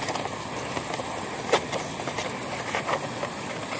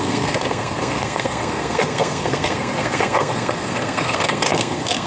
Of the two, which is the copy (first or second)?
second